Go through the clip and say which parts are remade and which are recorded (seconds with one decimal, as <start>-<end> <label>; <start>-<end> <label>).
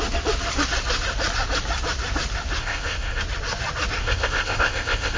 0.0-2.6 recorded; 2.6-3.2 remade; 3.2-4.0 recorded; 4.0-5.2 remade